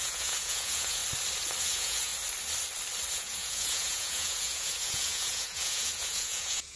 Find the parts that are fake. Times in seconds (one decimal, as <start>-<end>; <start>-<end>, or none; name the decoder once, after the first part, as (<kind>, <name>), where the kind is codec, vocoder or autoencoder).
0.0-1.0 (vocoder, Vocos); 1.6-2.1; 3.1-6.8